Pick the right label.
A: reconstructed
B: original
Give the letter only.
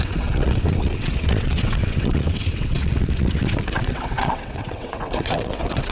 A